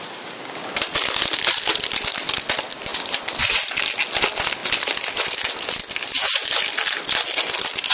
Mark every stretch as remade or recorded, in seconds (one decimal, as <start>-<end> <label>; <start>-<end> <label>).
0.0-7.9 recorded